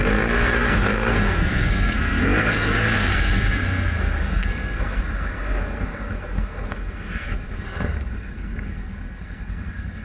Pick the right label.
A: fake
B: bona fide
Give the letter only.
A